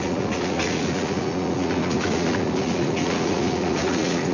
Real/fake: fake